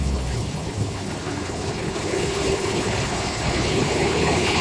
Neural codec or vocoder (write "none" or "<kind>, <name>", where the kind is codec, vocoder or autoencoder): codec, HILCodec